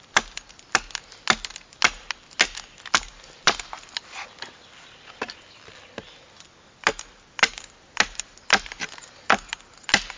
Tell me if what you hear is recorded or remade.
recorded